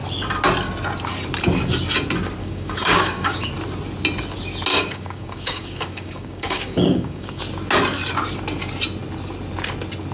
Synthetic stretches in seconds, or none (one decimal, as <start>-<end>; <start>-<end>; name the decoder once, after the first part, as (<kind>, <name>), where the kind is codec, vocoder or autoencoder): 2.4-3.5 (codec, DAC); 4.7-7.4